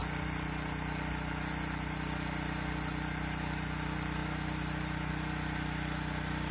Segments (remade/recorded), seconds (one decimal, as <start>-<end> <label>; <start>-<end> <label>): 0.0-6.5 recorded